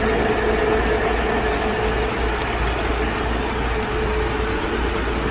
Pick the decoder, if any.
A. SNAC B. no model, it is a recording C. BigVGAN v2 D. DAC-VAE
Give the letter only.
B